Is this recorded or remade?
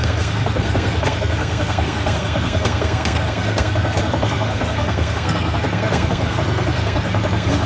remade